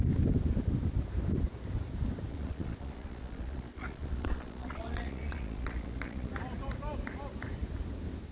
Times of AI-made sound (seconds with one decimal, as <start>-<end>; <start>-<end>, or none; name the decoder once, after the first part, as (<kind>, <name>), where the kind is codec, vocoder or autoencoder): 2.3-6.3 (vocoder, Vocos)